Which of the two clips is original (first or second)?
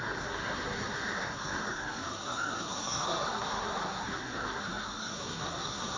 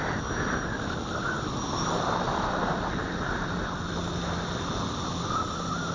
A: second